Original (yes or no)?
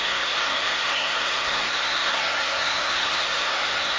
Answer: no